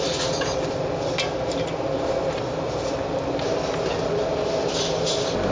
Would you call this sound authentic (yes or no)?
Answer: yes